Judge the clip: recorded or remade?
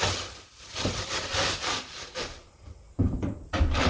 remade